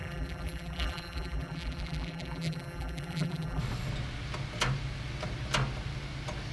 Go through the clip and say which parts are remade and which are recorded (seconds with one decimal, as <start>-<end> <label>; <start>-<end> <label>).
0.0-3.6 remade; 3.6-6.5 recorded